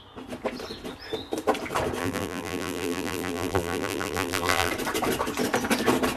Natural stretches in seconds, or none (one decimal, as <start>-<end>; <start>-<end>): 0.0-2.0; 4.7-6.2